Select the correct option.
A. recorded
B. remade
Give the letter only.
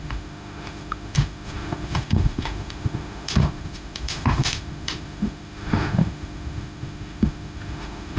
B